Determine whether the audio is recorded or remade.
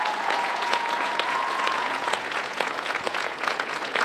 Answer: remade